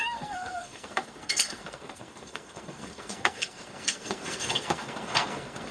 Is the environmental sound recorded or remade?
remade